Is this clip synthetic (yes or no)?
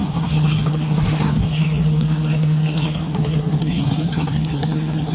yes